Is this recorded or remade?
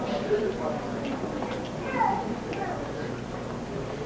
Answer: recorded